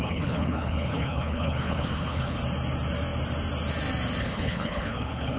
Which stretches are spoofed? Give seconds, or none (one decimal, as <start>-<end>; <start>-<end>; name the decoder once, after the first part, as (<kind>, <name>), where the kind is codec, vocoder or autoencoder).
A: 0.0-2.4 (codec, HILCodec); 4.2-5.4